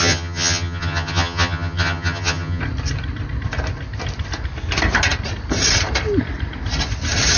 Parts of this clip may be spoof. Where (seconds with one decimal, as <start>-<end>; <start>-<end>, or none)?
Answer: 0.0-2.6